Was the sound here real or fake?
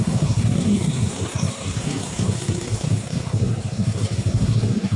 fake